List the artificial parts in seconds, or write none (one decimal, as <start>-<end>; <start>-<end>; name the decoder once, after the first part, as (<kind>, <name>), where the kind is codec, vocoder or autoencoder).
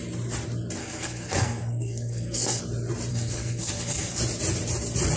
0.8-2.6 (codec, SNAC); 3.1-4.2